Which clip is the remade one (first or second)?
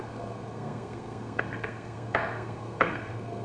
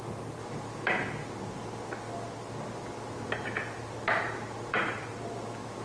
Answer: first